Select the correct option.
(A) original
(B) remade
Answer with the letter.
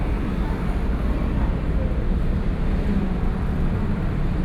A